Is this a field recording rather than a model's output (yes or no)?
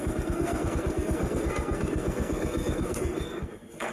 no